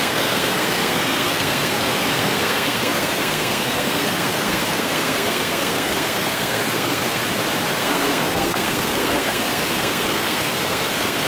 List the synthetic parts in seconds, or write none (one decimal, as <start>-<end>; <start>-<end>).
0.0-7.2; 7.7-11.3